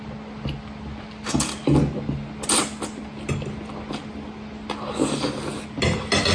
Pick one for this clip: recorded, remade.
recorded